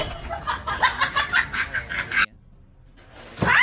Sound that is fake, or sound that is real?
real